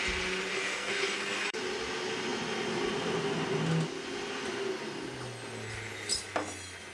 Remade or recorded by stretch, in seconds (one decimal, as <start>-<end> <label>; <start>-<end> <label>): 0.0-0.5 recorded; 0.5-1.6 remade; 1.6-6.9 recorded